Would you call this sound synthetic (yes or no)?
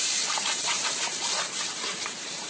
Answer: yes